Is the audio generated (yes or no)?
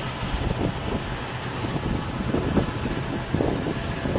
no